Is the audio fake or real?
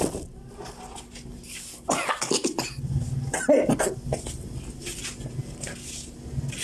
real